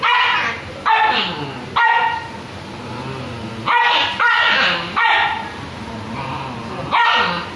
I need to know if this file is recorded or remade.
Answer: recorded